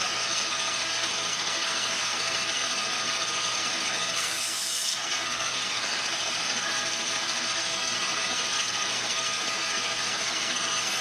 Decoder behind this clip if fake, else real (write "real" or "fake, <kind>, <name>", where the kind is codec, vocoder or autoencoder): fake, codec, SNAC